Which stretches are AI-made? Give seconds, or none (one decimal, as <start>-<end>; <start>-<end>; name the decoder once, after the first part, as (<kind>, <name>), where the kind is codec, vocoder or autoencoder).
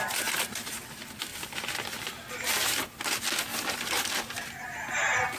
1.3-2.7 (vocoder, BigVGAN v2); 3.5-4.0